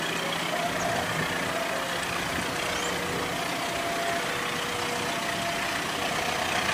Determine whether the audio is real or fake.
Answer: real